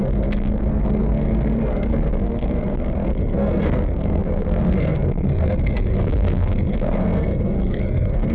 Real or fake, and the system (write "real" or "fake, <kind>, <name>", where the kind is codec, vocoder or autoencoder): fake, codec, SNAC